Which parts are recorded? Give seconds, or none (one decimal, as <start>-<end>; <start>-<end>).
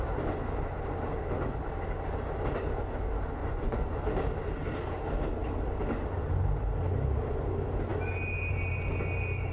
0.0-3.4; 4.0-9.5